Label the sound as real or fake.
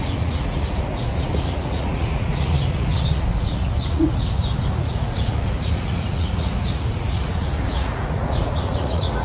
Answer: fake